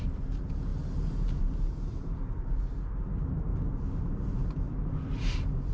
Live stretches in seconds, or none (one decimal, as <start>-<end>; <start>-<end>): 3.5-4.5